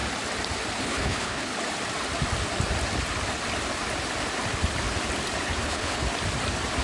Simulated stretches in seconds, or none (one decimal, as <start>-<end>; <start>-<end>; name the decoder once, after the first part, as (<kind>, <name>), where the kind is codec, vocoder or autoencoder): 0.8-1.5 (codec, HILCodec); 5.6-6.0